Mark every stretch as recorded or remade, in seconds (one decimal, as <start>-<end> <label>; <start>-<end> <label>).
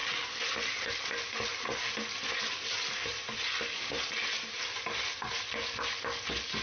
0.0-6.6 recorded